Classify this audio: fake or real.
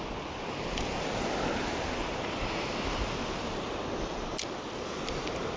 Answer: real